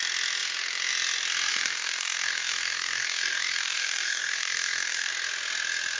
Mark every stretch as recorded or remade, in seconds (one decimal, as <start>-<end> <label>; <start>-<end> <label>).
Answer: 0.0-1.5 recorded; 1.5-5.1 remade; 5.1-6.0 recorded